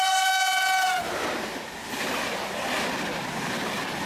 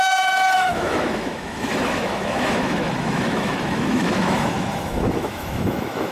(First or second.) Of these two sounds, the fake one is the second